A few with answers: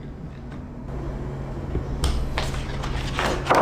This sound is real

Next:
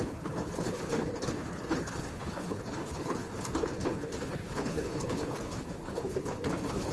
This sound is fake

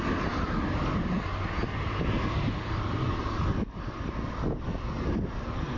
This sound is real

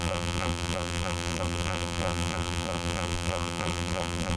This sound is fake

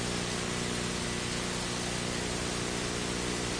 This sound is real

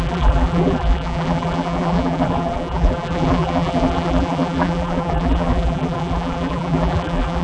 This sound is fake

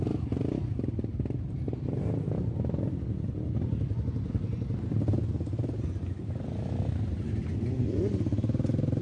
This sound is real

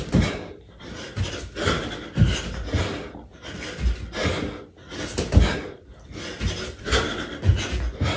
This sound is real